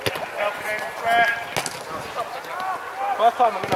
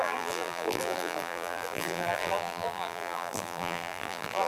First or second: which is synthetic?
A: second